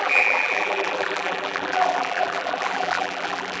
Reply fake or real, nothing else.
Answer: fake